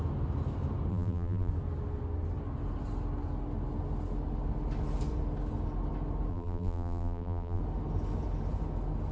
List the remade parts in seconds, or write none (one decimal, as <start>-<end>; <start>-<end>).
0.9-1.5; 6.3-7.6